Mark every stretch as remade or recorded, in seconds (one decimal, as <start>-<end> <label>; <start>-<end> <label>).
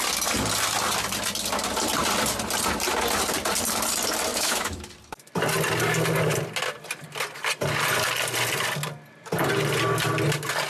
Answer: 0.0-4.3 recorded; 4.3-4.9 remade; 4.9-10.7 recorded